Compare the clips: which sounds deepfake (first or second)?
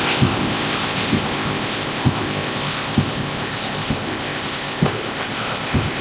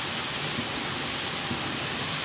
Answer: first